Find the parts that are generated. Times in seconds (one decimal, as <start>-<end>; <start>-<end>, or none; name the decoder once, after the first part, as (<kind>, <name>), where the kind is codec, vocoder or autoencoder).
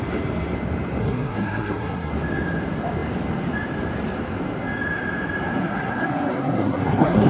1.0-2.1 (codec, SNAC); 5.6-7.3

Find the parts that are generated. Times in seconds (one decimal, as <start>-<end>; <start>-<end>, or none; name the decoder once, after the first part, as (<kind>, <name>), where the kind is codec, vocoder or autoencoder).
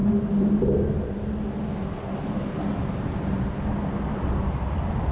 none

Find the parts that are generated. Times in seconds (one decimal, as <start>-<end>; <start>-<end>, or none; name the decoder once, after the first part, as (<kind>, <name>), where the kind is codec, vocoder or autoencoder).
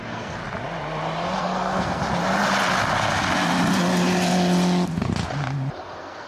0.0-0.4 (codec, SNAC); 1.4-2.0; 5.8-6.3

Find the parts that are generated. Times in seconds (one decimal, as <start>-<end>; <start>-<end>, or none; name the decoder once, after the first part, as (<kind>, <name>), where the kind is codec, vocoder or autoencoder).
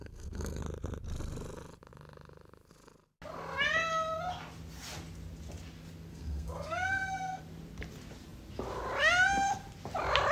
0.0-0.6 (codec, SNAC); 6.1-7.4